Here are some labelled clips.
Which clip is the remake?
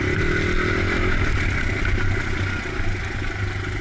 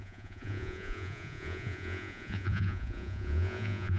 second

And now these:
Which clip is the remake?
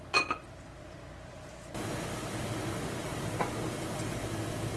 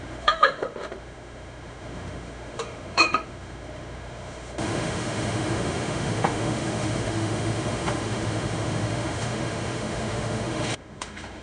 second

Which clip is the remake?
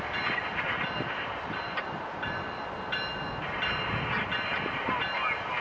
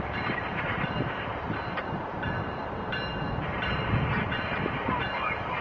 second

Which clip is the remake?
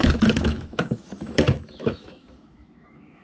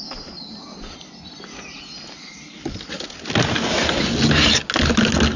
first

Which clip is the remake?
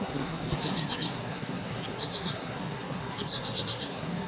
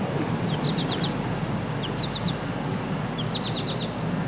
first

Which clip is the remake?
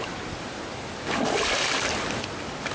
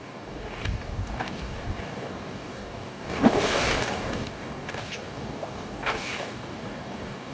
second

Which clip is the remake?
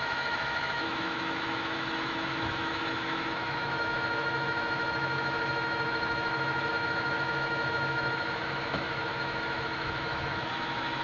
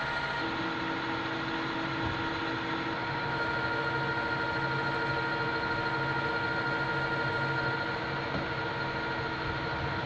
first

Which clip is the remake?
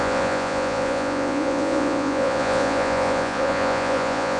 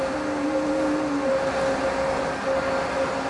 first